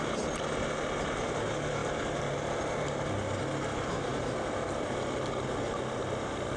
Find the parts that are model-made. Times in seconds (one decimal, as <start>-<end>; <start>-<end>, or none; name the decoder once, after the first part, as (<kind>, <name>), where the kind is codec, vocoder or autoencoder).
none